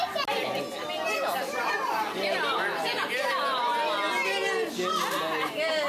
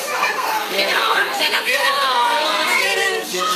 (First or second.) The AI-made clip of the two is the second